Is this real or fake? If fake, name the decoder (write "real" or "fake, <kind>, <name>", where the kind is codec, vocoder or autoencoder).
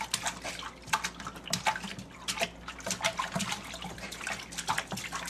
real